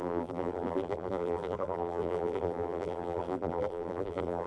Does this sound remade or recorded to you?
remade